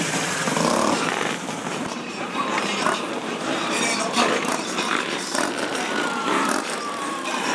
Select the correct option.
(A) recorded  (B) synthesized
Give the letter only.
B